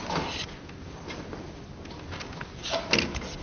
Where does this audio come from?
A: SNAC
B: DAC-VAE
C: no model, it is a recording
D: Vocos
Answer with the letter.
C